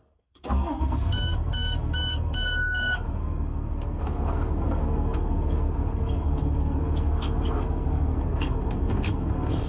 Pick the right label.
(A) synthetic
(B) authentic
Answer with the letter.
A